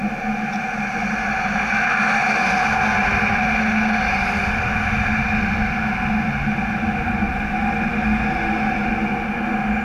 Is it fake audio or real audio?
real